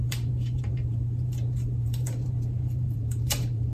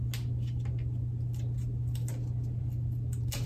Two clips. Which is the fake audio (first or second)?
first